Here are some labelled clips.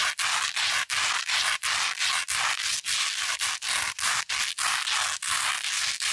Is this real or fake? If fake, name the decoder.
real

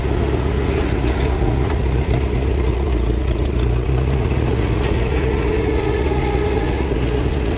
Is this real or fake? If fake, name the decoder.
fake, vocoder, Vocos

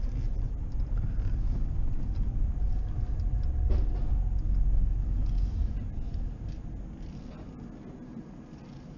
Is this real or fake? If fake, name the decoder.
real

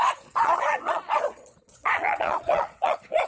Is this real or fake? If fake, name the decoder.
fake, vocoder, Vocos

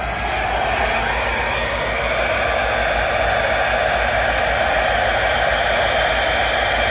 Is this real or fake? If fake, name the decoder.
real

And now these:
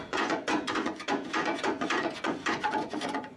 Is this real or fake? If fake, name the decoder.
fake, vocoder, Vocos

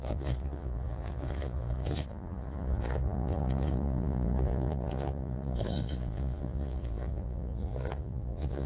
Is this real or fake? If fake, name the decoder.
fake, vocoder, Vocos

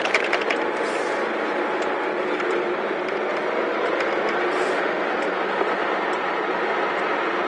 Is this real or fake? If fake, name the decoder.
real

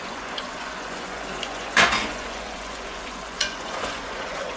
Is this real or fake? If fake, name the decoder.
fake, vocoder, Vocos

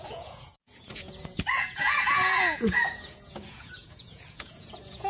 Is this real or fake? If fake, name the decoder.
fake, vocoder, Vocos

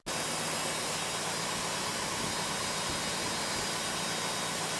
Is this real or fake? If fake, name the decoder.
real